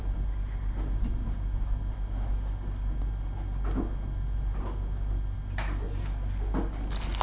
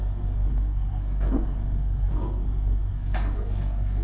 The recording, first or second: first